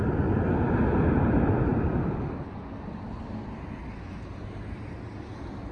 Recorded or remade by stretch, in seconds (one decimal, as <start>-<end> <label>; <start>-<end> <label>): 0.0-1.7 recorded; 1.7-2.4 remade; 2.4-5.7 recorded